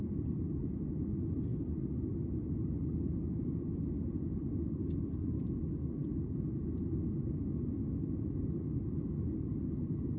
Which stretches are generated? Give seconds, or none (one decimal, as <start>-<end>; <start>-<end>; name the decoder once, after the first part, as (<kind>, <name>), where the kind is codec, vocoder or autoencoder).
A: none